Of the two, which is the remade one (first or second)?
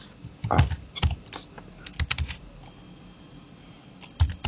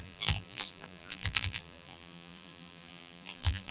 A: second